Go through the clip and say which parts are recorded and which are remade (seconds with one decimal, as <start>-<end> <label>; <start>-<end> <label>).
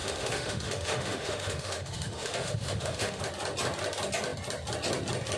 0.0-3.2 remade; 3.2-5.4 recorded